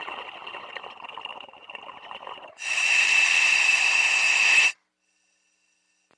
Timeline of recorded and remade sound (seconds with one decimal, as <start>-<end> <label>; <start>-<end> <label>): 0.0-1.3 recorded; 1.3-3.4 remade; 3.4-6.2 recorded